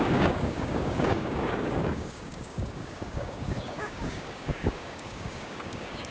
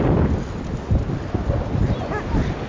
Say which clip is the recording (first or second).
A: second